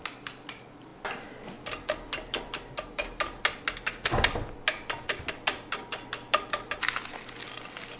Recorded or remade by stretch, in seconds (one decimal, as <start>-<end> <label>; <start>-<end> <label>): 0.0-8.0 recorded